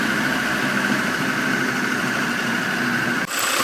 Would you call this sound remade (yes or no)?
yes